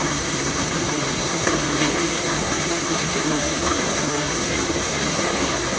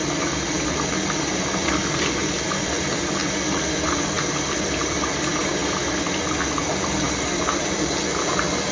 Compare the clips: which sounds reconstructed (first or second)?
first